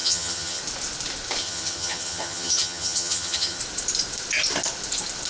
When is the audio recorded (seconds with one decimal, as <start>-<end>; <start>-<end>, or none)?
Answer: 0.6-1.4; 3.6-5.3